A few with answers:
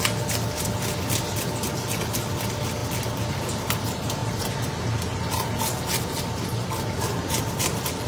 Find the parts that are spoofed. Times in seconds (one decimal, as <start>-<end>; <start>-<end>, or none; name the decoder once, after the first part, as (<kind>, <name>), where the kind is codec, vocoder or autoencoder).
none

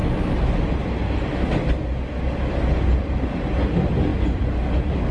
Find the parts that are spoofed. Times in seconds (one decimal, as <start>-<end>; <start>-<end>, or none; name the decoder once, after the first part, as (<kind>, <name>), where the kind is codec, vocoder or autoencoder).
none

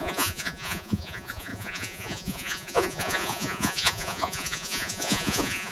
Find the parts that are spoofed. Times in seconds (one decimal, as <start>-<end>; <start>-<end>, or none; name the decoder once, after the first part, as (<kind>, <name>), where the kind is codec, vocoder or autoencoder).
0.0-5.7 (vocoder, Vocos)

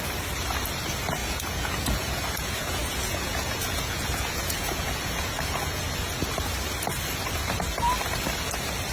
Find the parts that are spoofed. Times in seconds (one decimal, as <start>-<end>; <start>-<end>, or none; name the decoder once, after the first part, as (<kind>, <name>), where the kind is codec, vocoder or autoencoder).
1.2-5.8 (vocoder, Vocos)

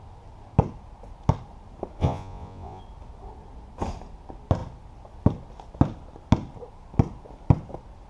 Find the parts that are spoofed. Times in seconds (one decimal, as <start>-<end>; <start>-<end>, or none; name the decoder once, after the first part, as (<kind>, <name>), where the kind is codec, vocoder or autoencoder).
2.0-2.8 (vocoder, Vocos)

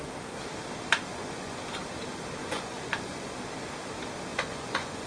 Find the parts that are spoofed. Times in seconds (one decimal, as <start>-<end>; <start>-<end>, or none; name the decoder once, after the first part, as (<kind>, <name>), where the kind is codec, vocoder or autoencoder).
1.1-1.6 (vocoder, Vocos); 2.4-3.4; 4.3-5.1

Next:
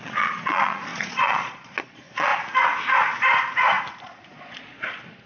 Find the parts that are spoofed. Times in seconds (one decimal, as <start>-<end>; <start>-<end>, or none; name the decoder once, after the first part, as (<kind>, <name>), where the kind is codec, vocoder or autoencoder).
0.0-2.3 (vocoder, Vocos); 4.0-5.3